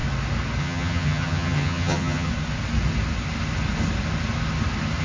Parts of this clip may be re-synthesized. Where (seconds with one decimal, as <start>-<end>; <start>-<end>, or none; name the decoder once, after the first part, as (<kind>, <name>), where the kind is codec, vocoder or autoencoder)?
0.6-2.3 (vocoder, HiFi-GAN)